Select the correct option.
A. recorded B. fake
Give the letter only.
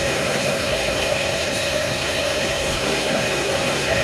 B